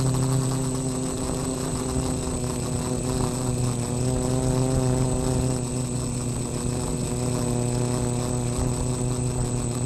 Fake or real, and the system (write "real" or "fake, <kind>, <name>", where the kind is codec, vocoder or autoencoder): real